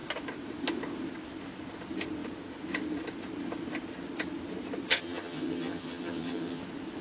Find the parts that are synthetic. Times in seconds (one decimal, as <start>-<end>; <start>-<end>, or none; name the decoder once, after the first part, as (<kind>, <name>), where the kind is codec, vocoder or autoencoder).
4.9-6.6 (vocoder, HiFi-GAN)